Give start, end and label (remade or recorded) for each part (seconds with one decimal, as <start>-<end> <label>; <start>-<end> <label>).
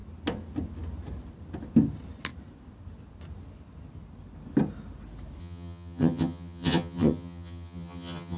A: 0.0-5.4 recorded; 5.4-8.4 remade